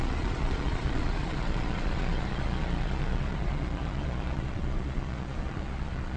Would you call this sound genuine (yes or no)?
no